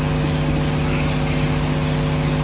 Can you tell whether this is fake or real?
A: real